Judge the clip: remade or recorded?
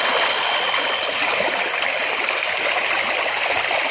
recorded